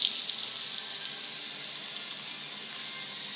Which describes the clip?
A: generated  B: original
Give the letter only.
B